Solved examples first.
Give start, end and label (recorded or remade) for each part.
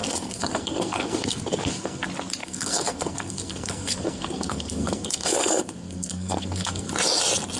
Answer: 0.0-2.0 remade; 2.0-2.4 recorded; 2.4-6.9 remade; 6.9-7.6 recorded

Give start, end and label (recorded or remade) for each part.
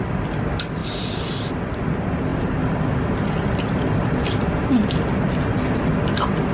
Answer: 0.0-6.5 recorded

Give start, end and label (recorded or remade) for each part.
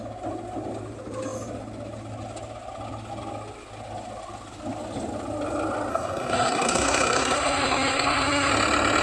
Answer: 0.0-5.9 recorded; 5.9-8.5 remade; 8.5-9.0 recorded